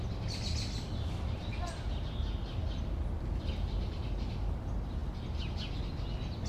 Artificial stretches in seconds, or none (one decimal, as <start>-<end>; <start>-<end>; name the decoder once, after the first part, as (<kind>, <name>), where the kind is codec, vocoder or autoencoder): none